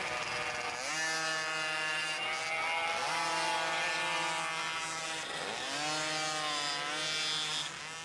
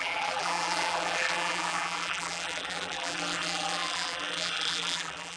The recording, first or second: first